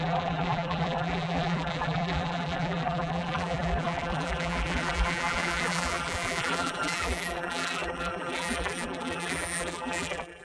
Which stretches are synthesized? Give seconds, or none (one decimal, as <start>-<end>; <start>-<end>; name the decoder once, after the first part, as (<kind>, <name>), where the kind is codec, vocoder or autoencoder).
0.0-10.4 (vocoder, BigVGAN v2)